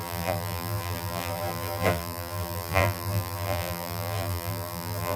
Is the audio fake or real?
fake